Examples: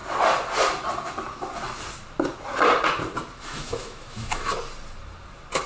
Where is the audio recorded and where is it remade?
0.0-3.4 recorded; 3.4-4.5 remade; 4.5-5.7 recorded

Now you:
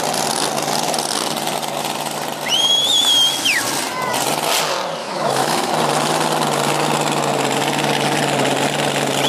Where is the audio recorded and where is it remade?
0.0-5.0 recorded; 5.0-5.7 remade; 5.7-9.3 recorded

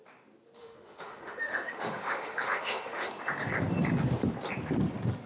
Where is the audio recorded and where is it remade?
0.0-0.6 recorded; 0.6-3.1 remade; 3.1-5.3 recorded

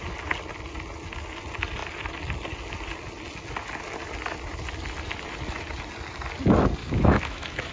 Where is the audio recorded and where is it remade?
0.0-6.8 recorded; 6.8-7.7 remade

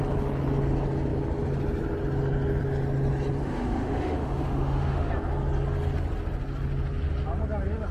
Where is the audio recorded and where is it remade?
0.0-3.4 recorded; 3.4-5.1 remade; 5.1-7.9 recorded

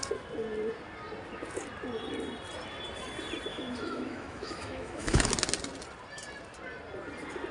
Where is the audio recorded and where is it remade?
0.0-3.5 recorded; 3.5-5.3 remade; 5.3-7.5 recorded

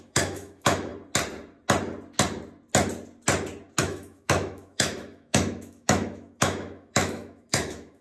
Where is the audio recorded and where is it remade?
0.0-0.9 remade; 0.9-3.8 recorded; 3.8-8.0 remade

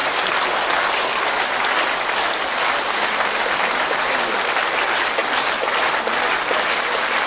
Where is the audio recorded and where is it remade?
0.0-7.3 recorded